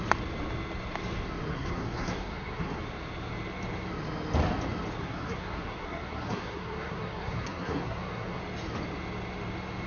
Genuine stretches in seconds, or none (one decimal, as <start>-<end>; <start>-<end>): 0.0-1.5; 2.8-5.0; 8.4-9.9